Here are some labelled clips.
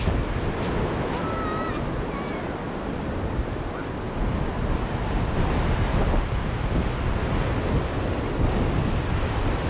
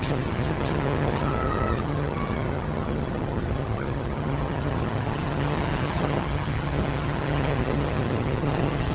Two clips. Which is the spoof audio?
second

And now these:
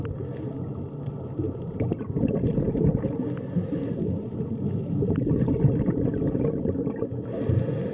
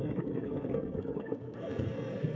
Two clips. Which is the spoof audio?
second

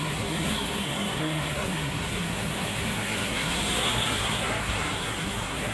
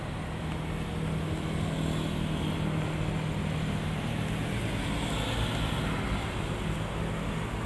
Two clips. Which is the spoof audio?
first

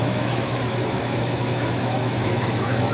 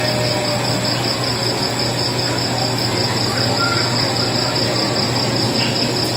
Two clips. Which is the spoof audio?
first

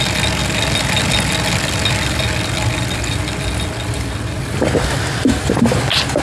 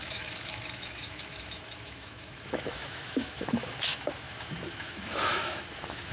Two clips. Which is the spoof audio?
second